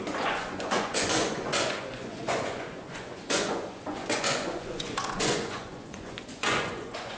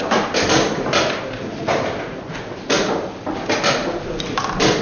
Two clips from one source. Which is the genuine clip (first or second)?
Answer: second